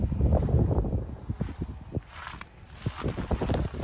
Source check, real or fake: real